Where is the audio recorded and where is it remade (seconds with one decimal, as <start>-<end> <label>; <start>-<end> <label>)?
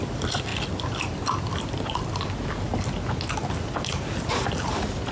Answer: 0.0-0.5 remade; 0.5-3.6 recorded; 3.6-5.1 remade